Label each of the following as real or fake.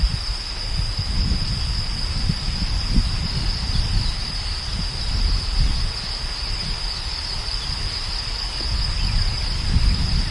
real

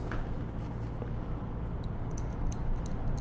real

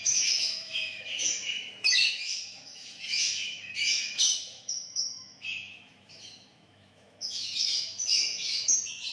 fake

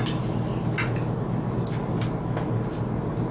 real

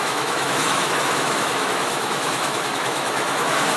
fake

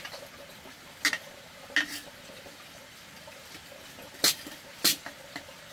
real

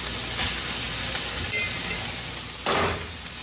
real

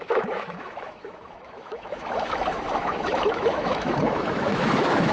fake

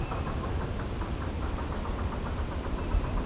real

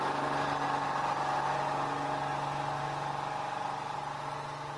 real